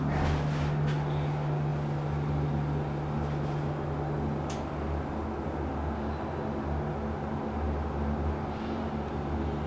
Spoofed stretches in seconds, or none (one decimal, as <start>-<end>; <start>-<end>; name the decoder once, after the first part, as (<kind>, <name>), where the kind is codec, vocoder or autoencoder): none